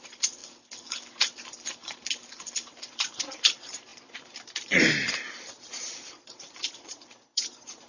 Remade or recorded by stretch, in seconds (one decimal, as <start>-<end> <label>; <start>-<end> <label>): 0.0-0.4 remade; 0.4-2.8 recorded; 2.8-7.9 remade